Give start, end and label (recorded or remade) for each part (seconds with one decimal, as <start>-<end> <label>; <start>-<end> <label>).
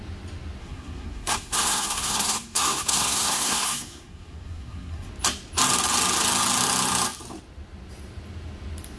0.0-0.6 recorded; 0.6-5.1 remade; 5.1-9.0 recorded